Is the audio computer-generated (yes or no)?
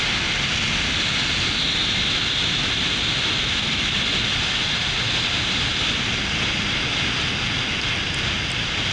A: no